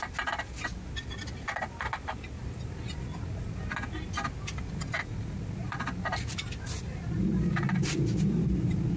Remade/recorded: recorded